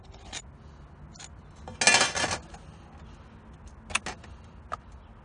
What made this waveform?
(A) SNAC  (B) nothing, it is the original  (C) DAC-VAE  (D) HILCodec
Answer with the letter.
B